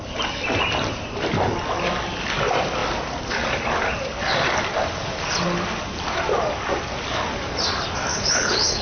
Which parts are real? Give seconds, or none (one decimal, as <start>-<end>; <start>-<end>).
0.0-8.1